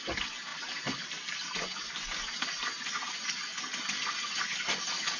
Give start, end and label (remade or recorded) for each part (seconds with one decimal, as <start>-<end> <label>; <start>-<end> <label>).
0.0-5.2 recorded